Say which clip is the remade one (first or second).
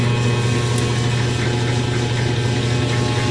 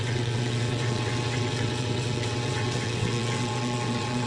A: second